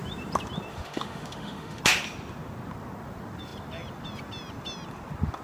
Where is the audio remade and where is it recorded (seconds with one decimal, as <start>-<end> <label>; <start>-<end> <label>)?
0.0-0.7 recorded; 0.7-1.8 remade; 1.8-5.4 recorded